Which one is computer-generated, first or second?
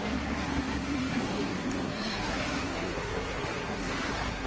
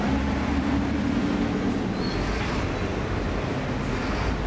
first